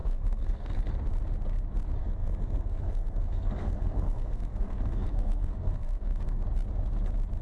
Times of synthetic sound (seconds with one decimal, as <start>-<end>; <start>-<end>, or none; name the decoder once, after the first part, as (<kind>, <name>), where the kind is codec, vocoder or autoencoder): 0.0-0.8 (codec, SNAC); 2.0-6.4